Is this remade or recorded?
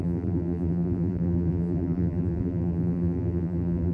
remade